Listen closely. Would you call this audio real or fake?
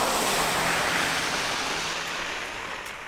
real